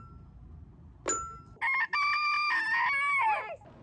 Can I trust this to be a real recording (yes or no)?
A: yes